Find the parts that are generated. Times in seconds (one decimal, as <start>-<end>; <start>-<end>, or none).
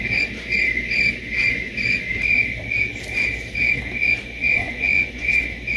4.4-5.2